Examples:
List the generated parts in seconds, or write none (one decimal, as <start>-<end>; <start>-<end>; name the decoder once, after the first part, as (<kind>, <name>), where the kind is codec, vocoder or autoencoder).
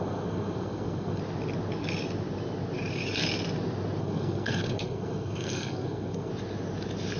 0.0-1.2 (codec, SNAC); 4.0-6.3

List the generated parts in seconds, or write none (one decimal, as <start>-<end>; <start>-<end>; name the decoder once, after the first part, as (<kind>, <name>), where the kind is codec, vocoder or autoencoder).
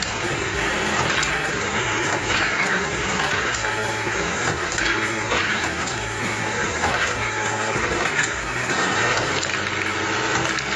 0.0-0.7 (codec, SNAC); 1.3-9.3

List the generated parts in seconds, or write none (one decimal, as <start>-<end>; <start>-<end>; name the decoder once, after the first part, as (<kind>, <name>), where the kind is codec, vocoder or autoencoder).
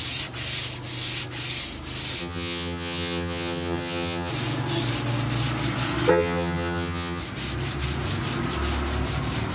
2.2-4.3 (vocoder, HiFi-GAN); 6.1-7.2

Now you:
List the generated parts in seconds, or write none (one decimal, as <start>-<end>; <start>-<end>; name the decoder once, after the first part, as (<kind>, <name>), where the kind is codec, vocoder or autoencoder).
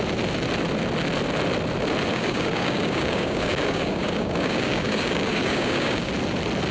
2.1-6.1 (codec, DAC)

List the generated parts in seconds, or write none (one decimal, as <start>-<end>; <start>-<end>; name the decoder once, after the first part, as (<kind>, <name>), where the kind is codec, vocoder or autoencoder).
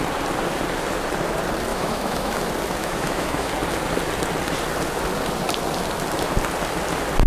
1.7-2.4 (autoencoder, DAC-VAE); 2.8-3.5